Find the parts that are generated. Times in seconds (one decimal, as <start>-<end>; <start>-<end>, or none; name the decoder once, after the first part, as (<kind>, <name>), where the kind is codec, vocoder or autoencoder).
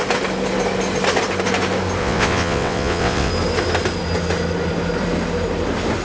2.0-3.3 (vocoder, WaveNeXt)